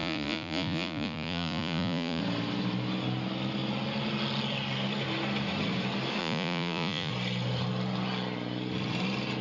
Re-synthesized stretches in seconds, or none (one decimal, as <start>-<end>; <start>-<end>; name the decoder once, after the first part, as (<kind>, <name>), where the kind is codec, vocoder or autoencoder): 0.0-2.2 (vocoder, Vocos); 6.2-7.1